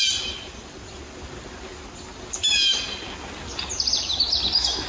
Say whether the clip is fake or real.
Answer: real